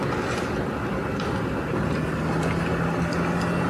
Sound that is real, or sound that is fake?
real